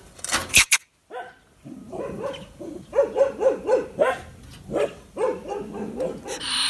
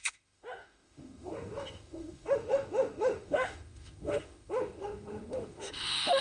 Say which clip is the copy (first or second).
second